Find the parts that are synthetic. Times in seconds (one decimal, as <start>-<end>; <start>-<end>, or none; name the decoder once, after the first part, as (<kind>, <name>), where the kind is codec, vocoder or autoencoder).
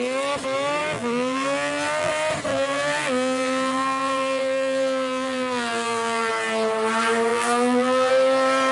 0.8-2.1 (vocoder, BigVGAN v2); 2.5-6.3; 7.3-8.1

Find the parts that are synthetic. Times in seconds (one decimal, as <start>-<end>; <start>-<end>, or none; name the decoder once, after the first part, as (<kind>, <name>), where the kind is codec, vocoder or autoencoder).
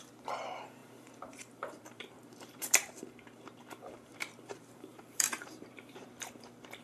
0.0-6.8 (vocoder, BigVGAN v2)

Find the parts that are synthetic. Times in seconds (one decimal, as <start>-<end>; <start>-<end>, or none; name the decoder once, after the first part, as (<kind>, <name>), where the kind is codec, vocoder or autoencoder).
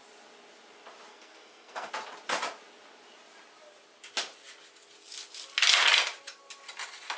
1.1-1.9 (codec, SNAC)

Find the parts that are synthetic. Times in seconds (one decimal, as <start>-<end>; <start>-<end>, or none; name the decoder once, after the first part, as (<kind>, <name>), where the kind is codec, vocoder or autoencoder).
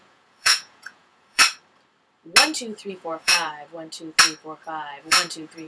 0.0-1.4 (vocoder, Vocos); 2.9-3.5; 5.0-5.7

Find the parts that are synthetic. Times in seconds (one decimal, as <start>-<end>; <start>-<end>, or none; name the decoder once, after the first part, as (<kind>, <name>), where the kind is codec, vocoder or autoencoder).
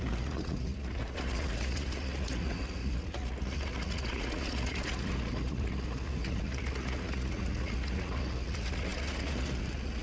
0.0-10.0 (vocoder, Vocos)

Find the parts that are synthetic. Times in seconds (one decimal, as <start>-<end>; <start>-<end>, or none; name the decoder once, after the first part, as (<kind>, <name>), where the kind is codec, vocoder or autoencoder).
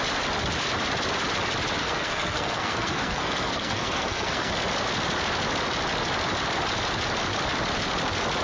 1.8-4.5 (codec, SNAC)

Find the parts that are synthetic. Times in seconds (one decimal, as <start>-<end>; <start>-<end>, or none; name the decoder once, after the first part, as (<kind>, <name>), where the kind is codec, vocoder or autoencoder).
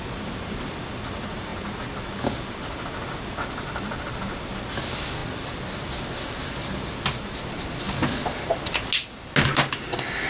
none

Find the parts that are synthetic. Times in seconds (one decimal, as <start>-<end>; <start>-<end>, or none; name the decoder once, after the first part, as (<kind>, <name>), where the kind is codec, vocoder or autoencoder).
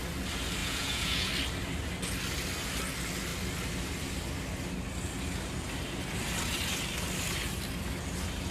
0.6-1.3 (vocoder, Vocos)